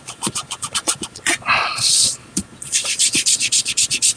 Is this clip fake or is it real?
fake